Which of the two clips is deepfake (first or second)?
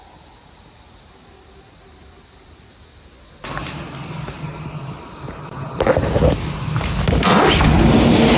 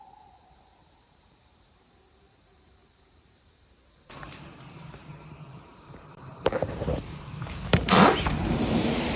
second